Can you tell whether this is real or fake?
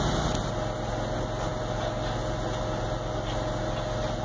real